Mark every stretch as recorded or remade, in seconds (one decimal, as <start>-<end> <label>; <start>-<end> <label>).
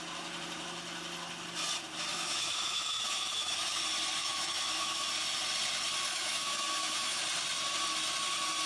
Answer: 0.0-2.1 recorded; 2.1-3.8 remade; 3.8-4.2 recorded; 4.2-5.1 remade; 5.1-6.1 recorded; 6.1-7.2 remade; 7.2-8.7 recorded